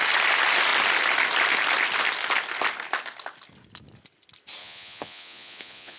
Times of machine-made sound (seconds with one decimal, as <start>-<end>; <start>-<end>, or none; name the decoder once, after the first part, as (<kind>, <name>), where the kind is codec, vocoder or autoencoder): 4.6-6.0 (vocoder, Vocos)